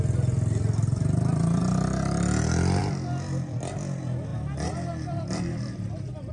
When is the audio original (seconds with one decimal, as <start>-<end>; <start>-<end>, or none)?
1.6-2.8; 4.3-5.1